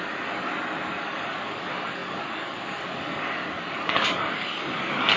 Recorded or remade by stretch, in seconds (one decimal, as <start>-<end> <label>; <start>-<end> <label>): 0.0-0.5 remade; 0.5-1.0 recorded; 1.0-5.2 remade